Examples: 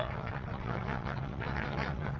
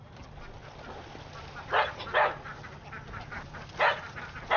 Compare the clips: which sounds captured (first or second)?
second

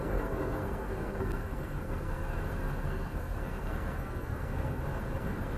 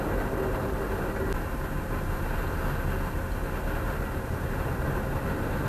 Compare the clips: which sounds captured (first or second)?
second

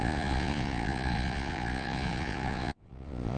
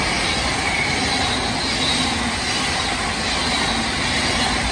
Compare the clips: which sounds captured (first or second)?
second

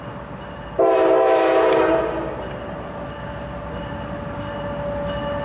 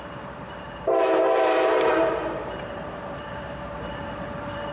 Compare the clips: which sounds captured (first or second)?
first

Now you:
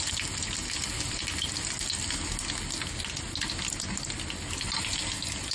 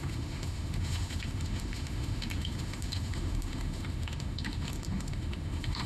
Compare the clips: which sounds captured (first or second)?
first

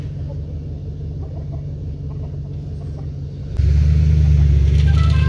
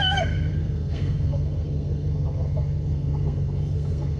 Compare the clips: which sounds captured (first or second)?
first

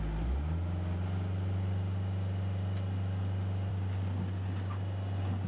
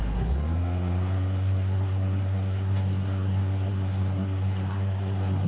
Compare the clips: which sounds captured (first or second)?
first